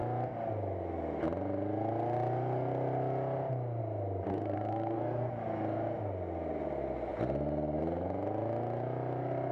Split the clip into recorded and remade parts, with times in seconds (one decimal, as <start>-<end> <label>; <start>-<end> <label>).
0.0-4.3 recorded; 4.3-5.3 remade; 5.3-9.5 recorded